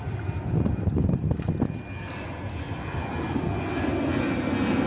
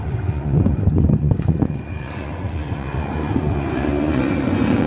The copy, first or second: second